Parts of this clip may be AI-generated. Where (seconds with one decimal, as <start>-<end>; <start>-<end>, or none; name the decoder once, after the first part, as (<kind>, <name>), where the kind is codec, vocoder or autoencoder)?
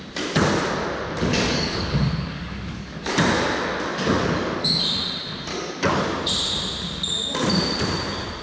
1.3-3.1 (codec, DAC); 3.9-4.8; 5.5-6.0